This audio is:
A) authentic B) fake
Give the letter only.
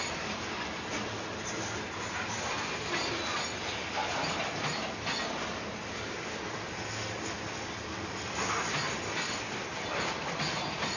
A